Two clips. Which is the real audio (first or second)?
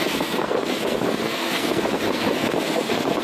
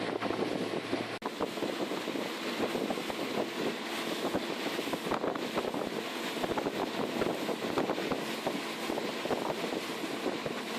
second